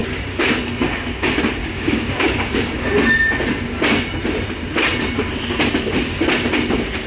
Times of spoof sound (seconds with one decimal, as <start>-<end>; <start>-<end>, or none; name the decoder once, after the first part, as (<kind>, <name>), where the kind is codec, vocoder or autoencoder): 0.0-0.6 (codec, DAC); 1.6-2.9